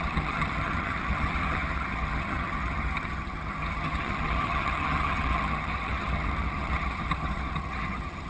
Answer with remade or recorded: remade